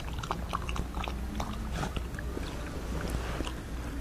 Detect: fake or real real